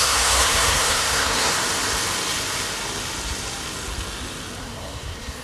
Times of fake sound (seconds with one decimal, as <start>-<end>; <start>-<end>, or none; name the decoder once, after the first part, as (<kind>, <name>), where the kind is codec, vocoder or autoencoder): 0.0-1.5 (codec, SNAC); 4.6-5.4